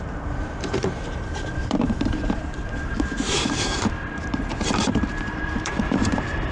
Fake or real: fake